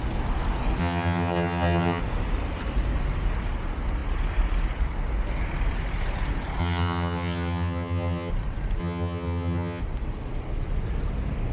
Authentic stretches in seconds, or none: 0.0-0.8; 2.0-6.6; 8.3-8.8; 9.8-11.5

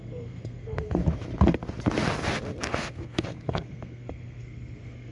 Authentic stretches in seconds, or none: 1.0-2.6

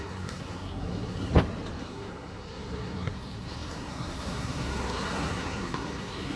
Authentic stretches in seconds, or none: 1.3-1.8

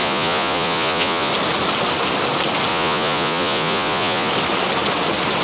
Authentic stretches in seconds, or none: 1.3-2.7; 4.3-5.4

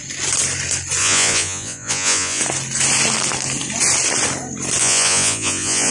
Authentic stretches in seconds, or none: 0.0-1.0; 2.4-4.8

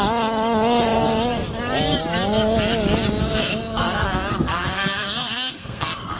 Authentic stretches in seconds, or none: 0.0-3.2

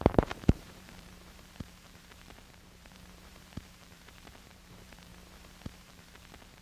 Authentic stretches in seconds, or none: 5.1-5.8

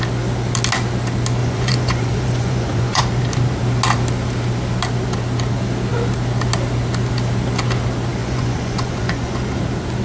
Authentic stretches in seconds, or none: 0.0-1.4; 3.0-8.2; 9.6-10.0